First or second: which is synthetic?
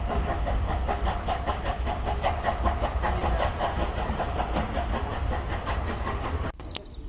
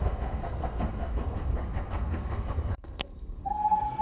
second